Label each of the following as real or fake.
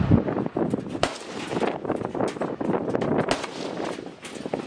real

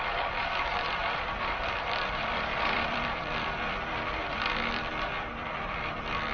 fake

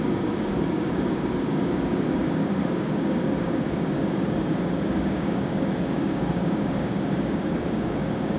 fake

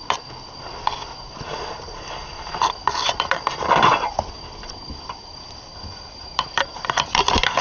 fake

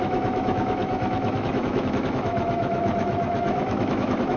fake